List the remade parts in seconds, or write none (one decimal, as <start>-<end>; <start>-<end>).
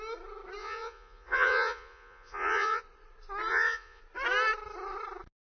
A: 0.6-2.8; 3.5-4.0